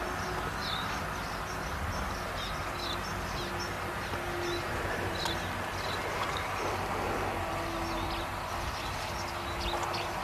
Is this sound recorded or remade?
recorded